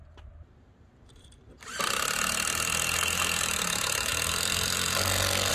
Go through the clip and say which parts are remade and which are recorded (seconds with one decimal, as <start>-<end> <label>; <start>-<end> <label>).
0.0-1.7 remade; 1.7-3.4 recorded; 3.4-4.1 remade; 4.1-5.5 recorded